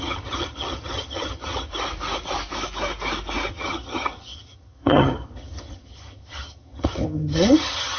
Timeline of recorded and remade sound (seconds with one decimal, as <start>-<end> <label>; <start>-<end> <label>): 0.0-1.7 remade; 1.7-3.5 recorded; 3.5-8.0 remade